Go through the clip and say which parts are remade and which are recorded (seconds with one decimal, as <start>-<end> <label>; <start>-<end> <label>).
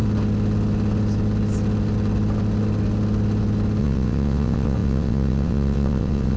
0.0-3.8 recorded; 3.8-6.4 remade